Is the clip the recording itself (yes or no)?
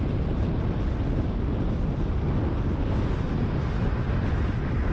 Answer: yes